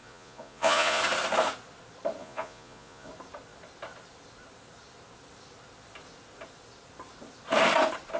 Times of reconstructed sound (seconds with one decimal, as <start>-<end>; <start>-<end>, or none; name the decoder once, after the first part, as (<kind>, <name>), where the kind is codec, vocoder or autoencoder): 0.0-1.0 (vocoder, Vocos); 2.2-3.1